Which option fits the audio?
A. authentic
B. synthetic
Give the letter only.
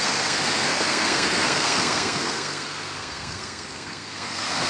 B